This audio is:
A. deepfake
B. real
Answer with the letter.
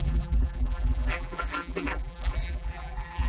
A